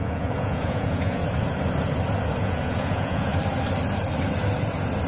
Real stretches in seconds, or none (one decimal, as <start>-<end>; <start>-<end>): 1.2-2.4; 3.3-5.1